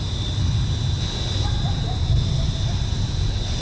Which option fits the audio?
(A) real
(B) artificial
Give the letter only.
A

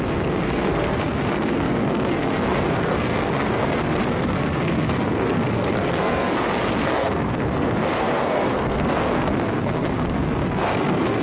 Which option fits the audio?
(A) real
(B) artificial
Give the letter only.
B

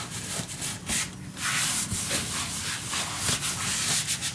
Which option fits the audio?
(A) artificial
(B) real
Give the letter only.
B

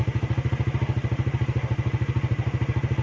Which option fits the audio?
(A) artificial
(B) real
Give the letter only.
B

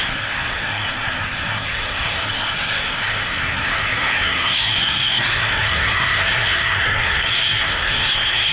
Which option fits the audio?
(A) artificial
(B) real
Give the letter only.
A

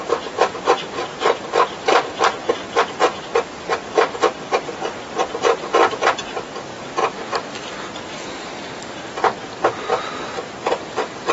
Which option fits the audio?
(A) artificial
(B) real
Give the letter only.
B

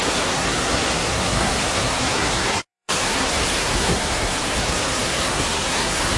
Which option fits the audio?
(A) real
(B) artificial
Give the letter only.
B